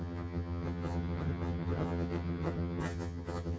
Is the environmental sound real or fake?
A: fake